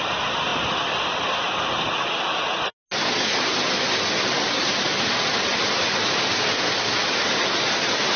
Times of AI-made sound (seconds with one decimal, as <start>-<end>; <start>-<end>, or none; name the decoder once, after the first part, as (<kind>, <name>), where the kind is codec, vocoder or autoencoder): none